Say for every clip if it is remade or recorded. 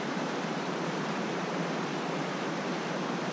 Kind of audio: remade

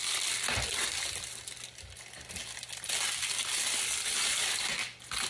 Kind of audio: recorded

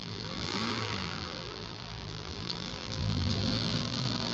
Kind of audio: remade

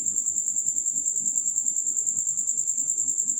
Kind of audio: remade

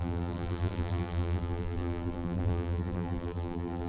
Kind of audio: remade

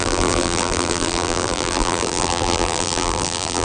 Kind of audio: remade